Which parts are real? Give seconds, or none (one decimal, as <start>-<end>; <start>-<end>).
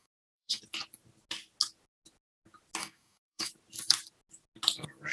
0.6-2.8; 3.5-5.1